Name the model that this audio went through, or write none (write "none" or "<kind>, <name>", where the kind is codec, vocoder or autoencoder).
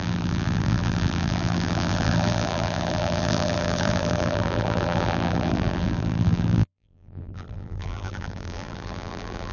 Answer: vocoder, BigVGAN v2